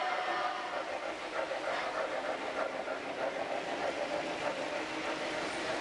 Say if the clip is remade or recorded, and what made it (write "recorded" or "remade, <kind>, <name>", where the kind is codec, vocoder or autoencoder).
recorded